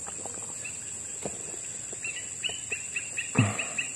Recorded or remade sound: recorded